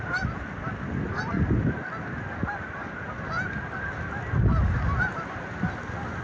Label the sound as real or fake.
real